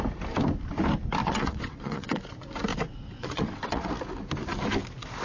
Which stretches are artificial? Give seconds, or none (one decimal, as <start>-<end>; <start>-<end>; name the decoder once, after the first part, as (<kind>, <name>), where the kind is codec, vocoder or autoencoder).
1.2-2.2 (vocoder, WaveNeXt); 2.7-3.9